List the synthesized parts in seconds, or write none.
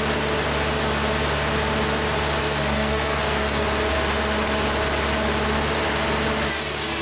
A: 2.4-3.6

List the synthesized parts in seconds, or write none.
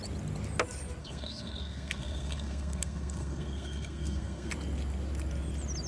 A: 1.0-4.5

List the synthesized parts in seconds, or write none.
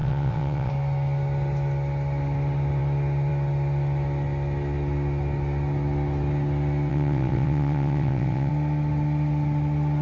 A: 0.0-0.7; 6.9-8.5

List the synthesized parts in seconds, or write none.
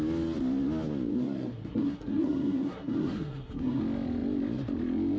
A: 1.1-3.8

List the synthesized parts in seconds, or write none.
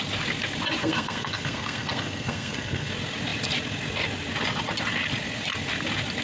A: 0.8-2.9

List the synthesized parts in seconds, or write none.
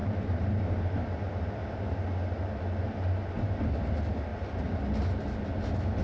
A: none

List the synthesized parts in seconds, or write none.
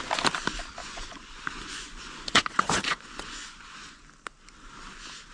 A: 0.8-4.0